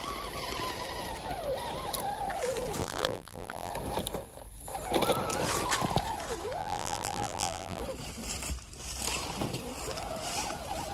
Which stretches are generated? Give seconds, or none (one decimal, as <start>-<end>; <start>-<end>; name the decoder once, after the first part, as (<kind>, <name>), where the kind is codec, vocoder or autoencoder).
2.8-3.7 (vocoder, BigVGAN v2); 6.6-7.8